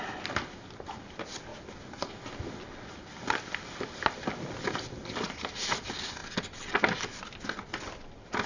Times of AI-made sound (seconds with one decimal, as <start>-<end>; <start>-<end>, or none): none